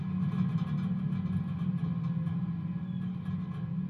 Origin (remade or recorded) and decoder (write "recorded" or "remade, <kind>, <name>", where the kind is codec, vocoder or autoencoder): recorded